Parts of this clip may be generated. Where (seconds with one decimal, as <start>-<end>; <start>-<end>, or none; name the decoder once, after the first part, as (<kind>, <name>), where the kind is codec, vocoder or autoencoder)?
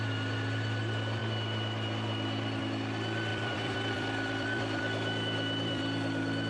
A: 1.2-2.6 (vocoder, BigVGAN v2); 3.3-6.5